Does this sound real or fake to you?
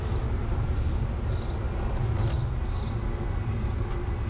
real